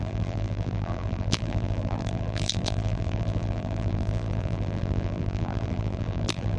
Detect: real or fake fake